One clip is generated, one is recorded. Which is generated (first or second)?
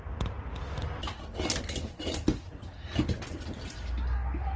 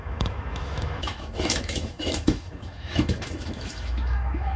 second